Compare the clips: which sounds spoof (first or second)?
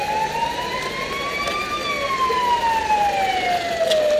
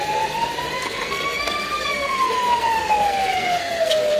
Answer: second